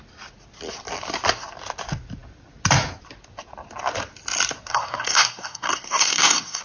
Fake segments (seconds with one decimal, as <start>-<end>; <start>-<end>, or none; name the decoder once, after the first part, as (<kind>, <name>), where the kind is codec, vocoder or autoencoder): 4.7-6.6 (codec, SNAC)